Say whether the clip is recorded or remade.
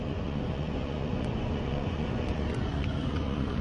remade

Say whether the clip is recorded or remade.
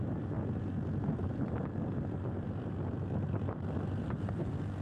recorded